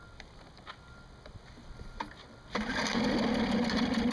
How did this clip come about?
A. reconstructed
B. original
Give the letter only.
B